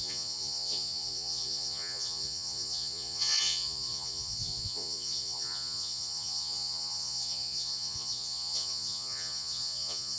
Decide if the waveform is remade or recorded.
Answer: remade